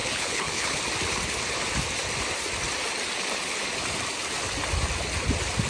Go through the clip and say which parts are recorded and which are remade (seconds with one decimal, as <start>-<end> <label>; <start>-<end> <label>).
0.0-0.8 remade; 0.8-5.7 recorded